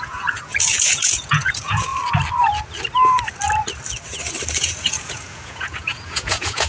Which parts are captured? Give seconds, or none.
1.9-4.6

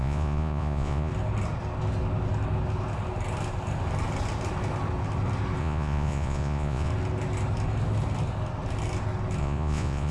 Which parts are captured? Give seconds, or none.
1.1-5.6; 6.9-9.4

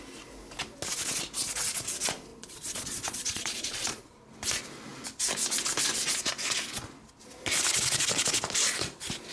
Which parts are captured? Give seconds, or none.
0.0-2.3; 4.0-9.3

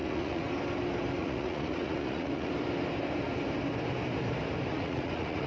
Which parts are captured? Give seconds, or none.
0.5-1.2; 2.5-4.7

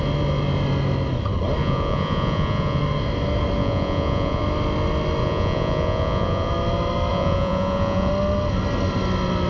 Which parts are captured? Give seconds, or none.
0.0-1.6; 2.8-3.6; 4.4-5.2; 6.5-7.1; 8.1-9.5

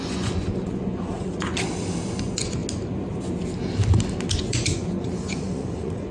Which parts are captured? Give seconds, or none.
1.5-2.2; 2.6-4.3

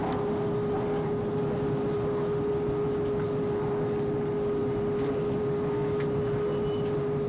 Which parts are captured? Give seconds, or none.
0.0-7.3